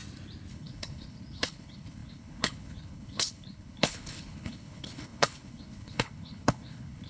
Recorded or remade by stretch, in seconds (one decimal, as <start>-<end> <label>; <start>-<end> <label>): 0.0-0.5 recorded; 0.5-7.1 remade